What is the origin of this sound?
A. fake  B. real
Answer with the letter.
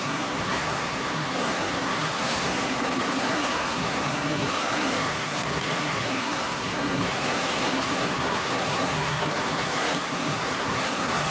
A